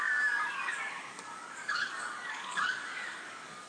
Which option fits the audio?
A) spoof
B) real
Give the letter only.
A